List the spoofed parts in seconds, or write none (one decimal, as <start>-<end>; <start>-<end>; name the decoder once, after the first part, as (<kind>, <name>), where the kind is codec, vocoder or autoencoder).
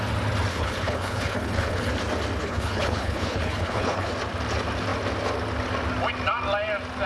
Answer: 0.5-1.9 (codec, HILCodec); 2.4-4.1